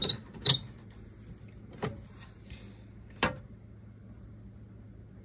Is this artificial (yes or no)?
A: no